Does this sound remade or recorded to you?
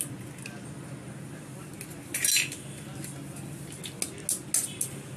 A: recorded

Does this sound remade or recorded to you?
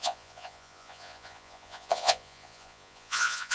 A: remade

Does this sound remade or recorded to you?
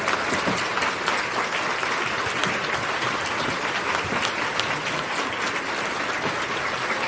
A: recorded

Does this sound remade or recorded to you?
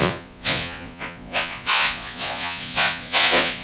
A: remade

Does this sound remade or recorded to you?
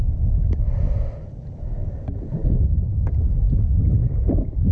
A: recorded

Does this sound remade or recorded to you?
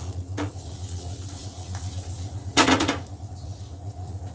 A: remade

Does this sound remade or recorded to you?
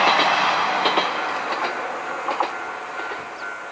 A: recorded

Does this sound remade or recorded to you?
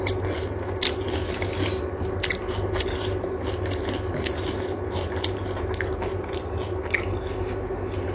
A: recorded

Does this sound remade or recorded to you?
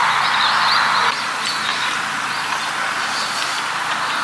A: recorded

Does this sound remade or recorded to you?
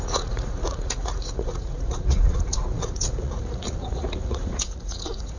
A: remade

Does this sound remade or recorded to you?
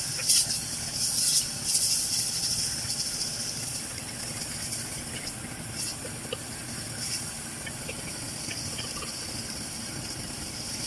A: recorded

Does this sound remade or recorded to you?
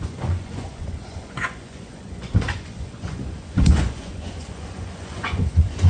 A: remade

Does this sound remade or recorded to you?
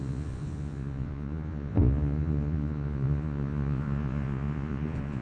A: remade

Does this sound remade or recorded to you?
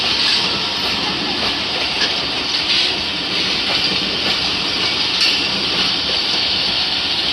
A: recorded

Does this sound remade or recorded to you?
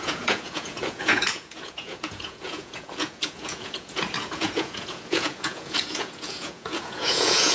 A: remade